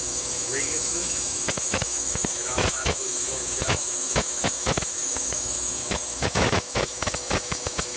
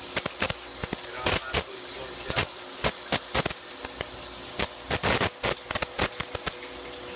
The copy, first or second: first